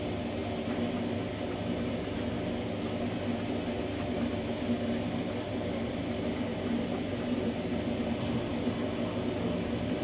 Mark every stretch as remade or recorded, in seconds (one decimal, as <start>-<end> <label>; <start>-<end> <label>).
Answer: 0.0-6.5 recorded; 6.5-8.5 remade; 8.5-10.0 recorded